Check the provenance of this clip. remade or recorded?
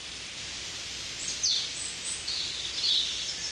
recorded